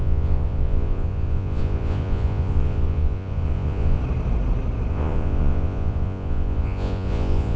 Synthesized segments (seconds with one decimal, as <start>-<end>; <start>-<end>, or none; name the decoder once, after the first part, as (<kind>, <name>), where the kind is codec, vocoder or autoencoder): 0.0-4.0 (vocoder, Vocos); 4.9-7.6